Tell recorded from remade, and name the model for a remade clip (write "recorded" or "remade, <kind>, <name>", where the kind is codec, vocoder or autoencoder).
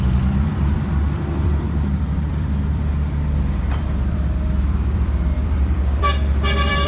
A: remade, vocoder, BigVGAN v2